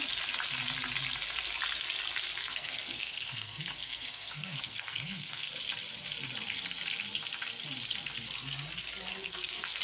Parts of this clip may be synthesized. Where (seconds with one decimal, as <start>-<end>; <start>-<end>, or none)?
2.4-5.5; 9.1-9.8